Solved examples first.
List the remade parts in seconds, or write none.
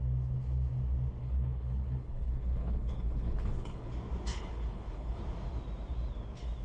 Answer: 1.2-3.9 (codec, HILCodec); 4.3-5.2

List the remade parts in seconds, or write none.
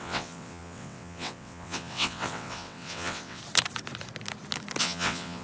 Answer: 0.0-3.4 (vocoder, WaveNeXt); 4.8-5.4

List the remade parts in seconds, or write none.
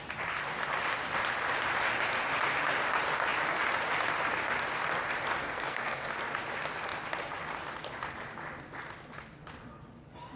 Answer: 5.4-6.1 (codec, SNAC)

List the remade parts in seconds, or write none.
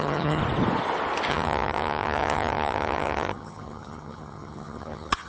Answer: 0.0-0.4 (vocoder, HiFi-GAN); 1.3-5.3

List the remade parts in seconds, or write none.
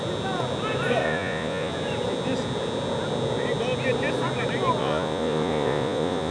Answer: 1.0-1.7 (vocoder, Vocos); 4.8-6.3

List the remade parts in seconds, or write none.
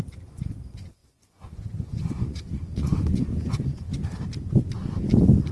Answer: 0.0-4.0 (vocoder, Vocos)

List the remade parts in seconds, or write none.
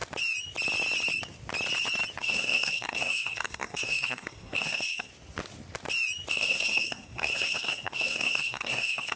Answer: 2.2-5.1 (codec, SNAC); 6.3-9.2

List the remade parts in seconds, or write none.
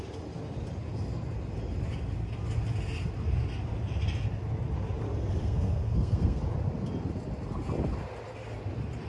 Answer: 5.4-6.4 (codec, SNAC)